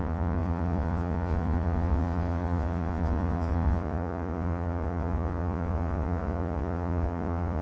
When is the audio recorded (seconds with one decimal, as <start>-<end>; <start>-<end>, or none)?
none